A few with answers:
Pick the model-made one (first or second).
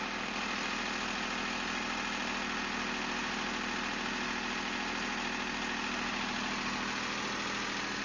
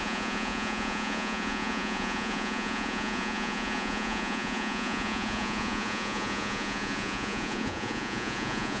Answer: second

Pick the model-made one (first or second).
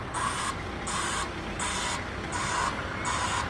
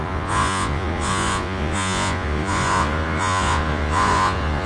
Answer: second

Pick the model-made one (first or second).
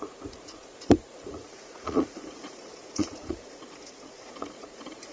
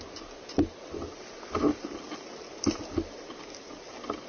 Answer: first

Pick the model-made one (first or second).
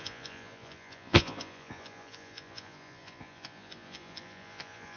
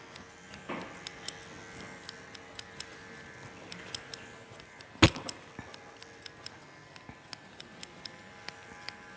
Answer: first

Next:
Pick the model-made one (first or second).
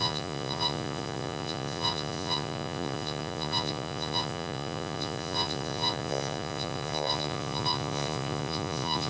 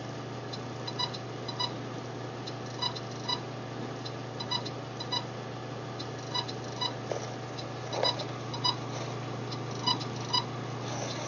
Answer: first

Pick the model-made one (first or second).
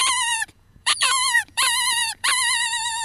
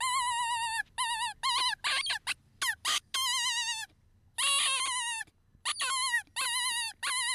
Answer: first